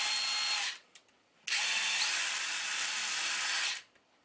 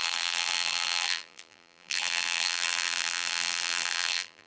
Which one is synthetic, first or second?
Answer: second